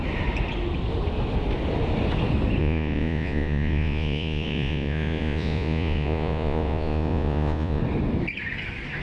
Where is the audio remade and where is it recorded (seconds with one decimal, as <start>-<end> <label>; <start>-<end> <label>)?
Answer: 0.0-2.6 recorded; 2.6-7.8 remade; 7.8-9.0 recorded